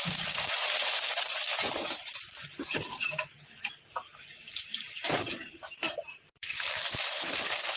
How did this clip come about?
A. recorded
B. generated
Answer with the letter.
B